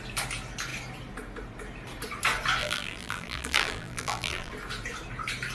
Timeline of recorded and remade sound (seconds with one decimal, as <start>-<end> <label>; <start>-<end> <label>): 0.0-2.6 recorded; 2.6-4.5 remade; 4.5-5.5 recorded

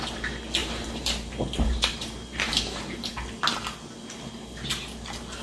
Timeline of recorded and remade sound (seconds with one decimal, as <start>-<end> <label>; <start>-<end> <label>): 0.0-0.6 recorded; 0.6-3.1 remade; 3.1-5.4 recorded

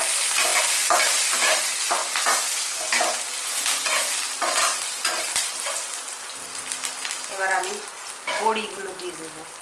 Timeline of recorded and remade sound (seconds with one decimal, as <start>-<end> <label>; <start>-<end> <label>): 0.0-9.6 recorded